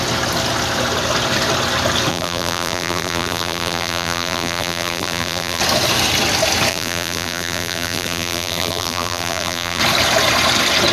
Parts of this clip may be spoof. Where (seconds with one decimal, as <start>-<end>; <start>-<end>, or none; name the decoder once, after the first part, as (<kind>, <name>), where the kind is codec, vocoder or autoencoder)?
2.1-5.6 (vocoder, BigVGAN v2); 6.7-9.8